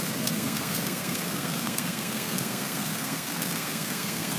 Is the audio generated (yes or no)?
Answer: yes